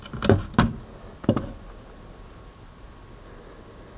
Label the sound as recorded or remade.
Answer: recorded